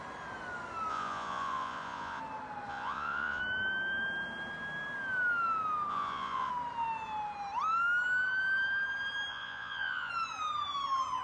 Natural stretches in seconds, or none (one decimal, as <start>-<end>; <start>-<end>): 0.0-0.9; 2.2-2.7; 3.4-5.9; 6.5-9.3; 10.1-11.2